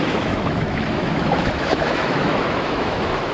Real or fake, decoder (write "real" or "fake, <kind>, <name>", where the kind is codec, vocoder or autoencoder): fake, autoencoder, DAC-VAE